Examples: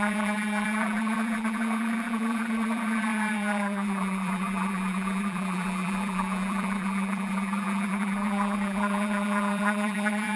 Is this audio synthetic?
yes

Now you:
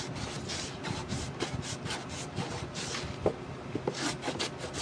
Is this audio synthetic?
no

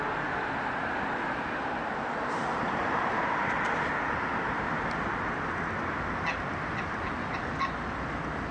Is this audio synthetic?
no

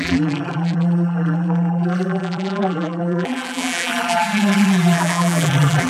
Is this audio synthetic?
yes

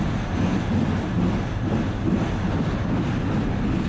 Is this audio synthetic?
no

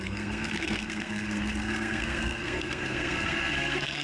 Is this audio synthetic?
yes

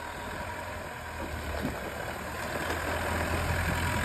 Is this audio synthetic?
no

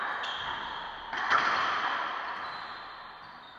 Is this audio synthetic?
no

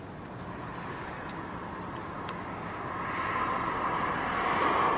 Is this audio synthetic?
no